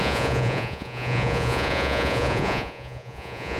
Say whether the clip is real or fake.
fake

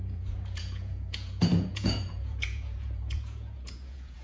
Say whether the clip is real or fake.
fake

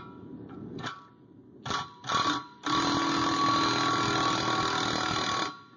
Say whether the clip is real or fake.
real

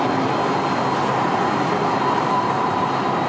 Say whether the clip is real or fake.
real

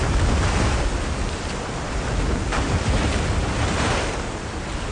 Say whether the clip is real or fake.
real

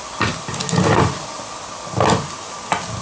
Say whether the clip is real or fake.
real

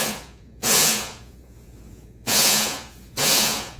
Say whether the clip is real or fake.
fake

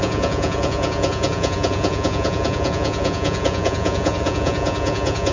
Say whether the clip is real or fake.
fake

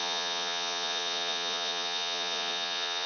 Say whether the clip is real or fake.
fake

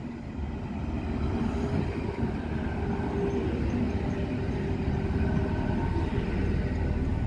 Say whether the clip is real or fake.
real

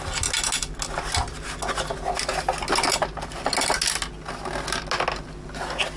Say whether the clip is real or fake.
real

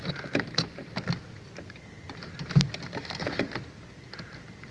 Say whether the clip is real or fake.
real